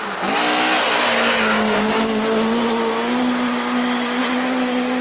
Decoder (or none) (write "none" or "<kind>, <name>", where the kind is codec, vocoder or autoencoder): none